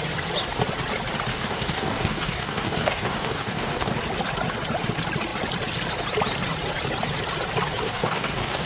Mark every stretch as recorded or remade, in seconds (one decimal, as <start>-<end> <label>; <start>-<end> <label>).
0.0-1.3 recorded; 1.3-3.9 remade; 3.9-7.8 recorded; 7.8-8.7 remade